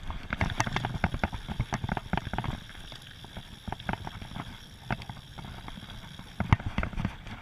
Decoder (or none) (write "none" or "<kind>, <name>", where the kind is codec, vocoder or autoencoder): none